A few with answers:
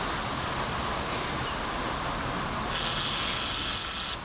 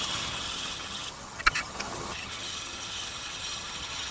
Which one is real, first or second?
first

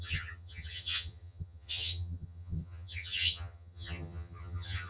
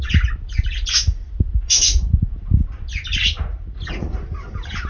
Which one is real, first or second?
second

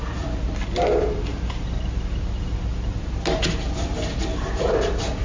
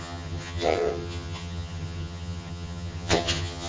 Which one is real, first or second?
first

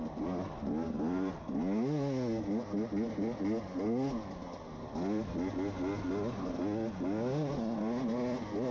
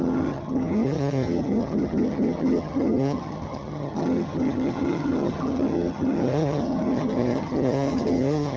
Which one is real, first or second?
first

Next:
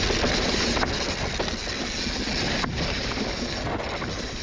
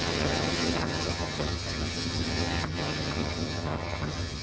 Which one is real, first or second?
first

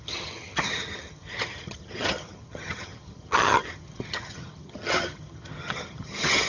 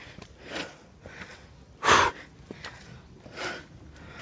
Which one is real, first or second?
second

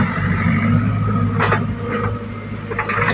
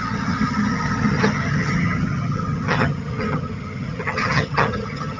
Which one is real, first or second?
first